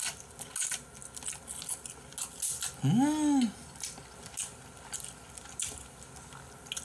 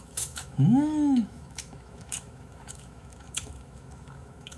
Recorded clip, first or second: first